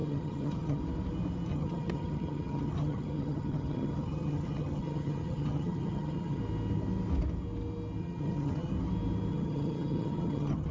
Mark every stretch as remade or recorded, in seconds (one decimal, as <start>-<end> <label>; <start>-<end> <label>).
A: 0.0-0.8 remade; 0.8-1.5 recorded; 1.5-6.4 remade; 6.4-8.0 recorded; 8.0-8.7 remade; 8.7-9.3 recorded; 9.3-10.7 remade